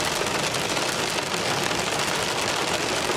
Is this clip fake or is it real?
real